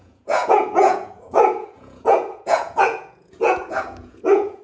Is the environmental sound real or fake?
fake